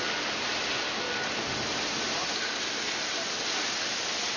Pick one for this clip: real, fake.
real